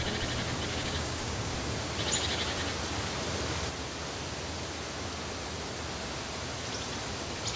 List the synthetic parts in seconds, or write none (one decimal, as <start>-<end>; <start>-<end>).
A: 0.7-1.5